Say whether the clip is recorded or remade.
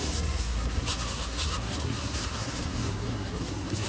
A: remade